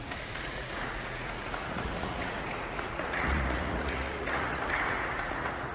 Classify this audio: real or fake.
fake